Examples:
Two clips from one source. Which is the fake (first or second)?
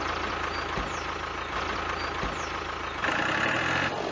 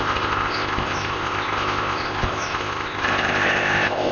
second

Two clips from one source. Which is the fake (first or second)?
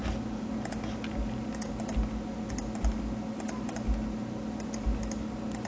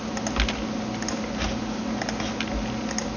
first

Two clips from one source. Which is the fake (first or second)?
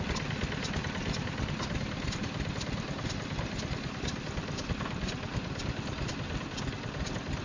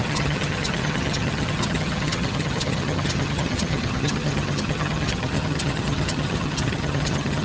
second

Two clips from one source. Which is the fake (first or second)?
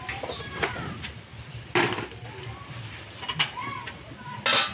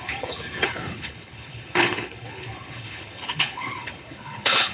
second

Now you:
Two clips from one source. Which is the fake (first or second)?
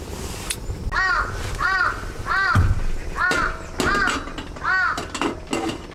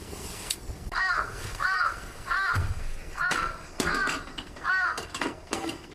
second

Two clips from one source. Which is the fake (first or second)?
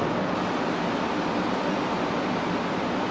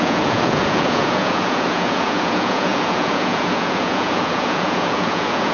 second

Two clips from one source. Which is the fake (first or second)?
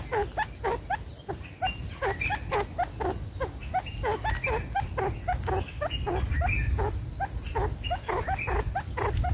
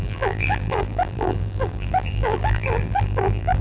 second